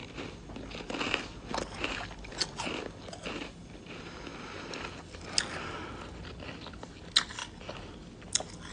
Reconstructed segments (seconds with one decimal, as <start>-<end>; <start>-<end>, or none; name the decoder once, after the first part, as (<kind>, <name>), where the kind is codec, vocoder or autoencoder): none